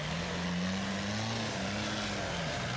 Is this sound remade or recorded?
recorded